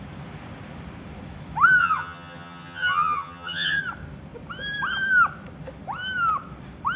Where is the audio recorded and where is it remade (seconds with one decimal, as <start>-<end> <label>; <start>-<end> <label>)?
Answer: 0.0-1.8 recorded; 1.8-3.8 remade; 3.8-7.0 recorded